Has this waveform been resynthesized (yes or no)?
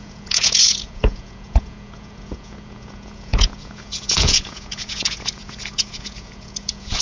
yes